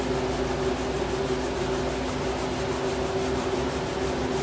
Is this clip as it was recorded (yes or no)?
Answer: yes